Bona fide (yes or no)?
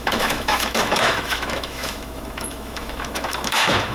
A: no